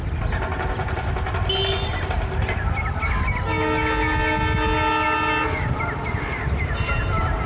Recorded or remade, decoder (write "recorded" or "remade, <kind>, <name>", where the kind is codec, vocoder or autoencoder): recorded